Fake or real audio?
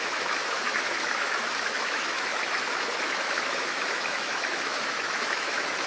fake